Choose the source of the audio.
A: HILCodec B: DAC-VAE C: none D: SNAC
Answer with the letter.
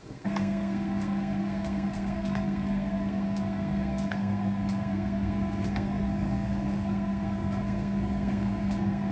D